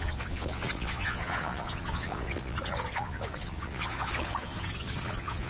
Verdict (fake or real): fake